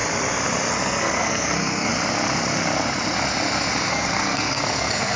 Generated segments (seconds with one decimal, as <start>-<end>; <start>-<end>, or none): 0.7-1.9; 3.9-5.2